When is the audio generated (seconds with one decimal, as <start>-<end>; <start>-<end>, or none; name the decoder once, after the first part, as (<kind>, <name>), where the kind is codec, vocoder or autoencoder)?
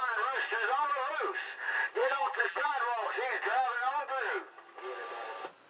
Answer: 2.0-2.7 (vocoder, BigVGAN v2)